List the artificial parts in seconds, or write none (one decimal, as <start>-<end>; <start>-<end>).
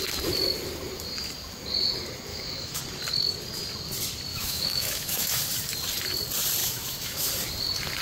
2.3-2.8; 4.3-5.4; 6.6-7.3